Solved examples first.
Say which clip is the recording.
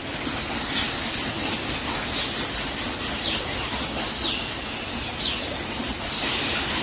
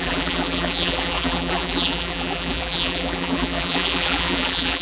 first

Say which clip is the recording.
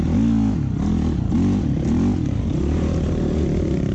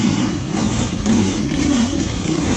first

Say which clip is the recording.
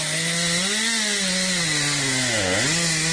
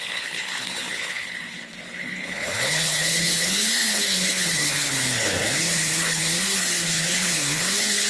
first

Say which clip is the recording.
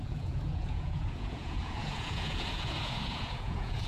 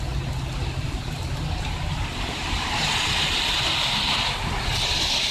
second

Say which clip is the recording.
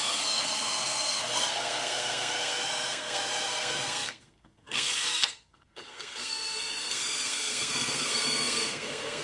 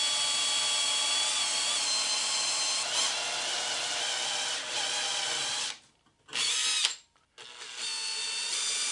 second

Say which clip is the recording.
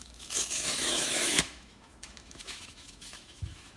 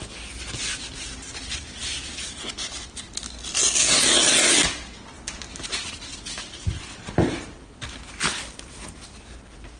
second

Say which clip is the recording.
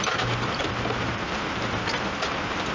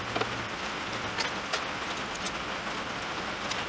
second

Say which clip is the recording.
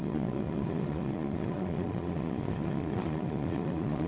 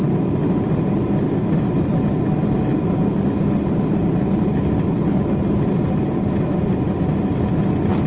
second